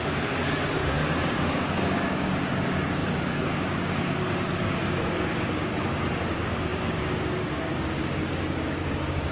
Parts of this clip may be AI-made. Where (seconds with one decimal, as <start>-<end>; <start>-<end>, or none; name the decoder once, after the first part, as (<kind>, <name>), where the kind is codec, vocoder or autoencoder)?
0.0-5.7 (codec, DAC); 6.3-9.3